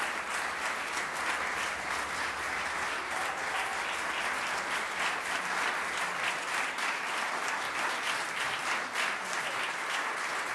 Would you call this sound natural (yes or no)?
yes